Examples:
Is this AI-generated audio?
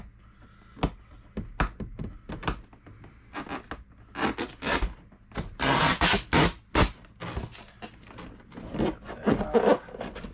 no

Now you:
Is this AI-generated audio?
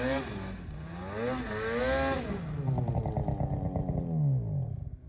no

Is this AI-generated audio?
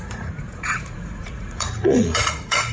yes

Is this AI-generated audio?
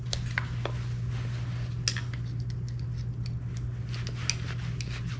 no